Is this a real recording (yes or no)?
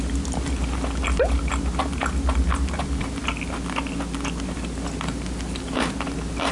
yes